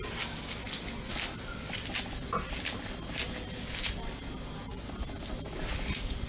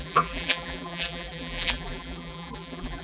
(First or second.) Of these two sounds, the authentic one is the first